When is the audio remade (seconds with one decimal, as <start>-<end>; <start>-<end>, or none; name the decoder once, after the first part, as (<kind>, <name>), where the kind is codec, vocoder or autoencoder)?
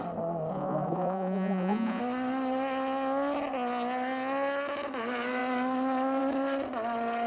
0.5-2.0 (vocoder, Vocos)